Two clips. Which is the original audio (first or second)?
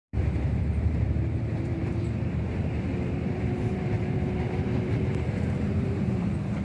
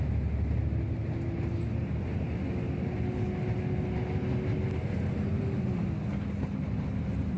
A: second